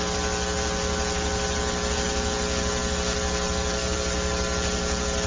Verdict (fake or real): real